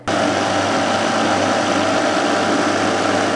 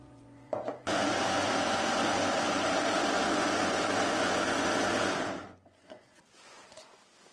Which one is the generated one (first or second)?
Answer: second